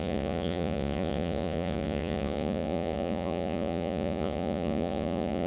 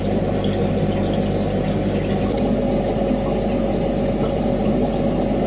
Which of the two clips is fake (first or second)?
first